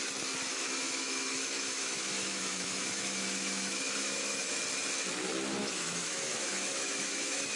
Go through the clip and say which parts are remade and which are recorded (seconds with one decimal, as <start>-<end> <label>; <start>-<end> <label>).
0.0-0.5 recorded; 0.5-4.6 remade; 4.6-5.6 recorded; 5.6-7.6 remade

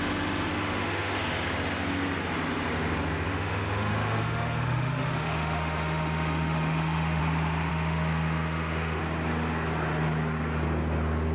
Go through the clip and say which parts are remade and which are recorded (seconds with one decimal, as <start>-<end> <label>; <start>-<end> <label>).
0.0-0.5 recorded; 0.5-1.2 remade; 1.2-3.3 recorded; 3.3-7.2 remade; 7.2-7.7 recorded; 7.7-9.0 remade; 9.0-11.3 recorded

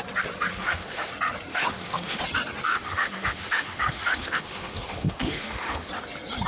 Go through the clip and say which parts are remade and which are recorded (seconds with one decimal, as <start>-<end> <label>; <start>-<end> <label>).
0.0-0.5 recorded; 0.5-1.1 remade; 1.1-1.5 recorded; 1.5-2.2 remade; 2.2-2.7 recorded; 2.7-5.9 remade; 5.9-6.5 recorded